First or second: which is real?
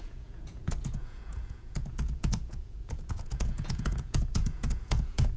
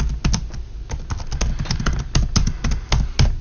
second